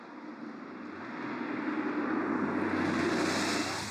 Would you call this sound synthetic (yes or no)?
no